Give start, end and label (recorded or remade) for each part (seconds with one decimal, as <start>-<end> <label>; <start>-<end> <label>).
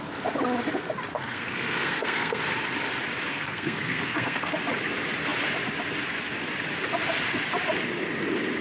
0.0-1.1 recorded; 1.1-2.4 remade; 2.4-3.3 recorded; 3.3-4.5 remade; 4.5-8.6 recorded